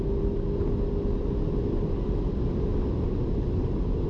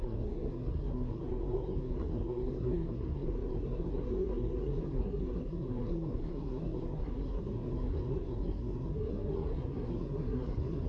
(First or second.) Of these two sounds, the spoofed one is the second